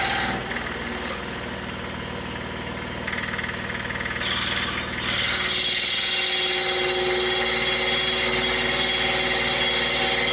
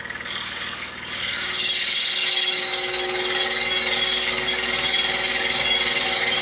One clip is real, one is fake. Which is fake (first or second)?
second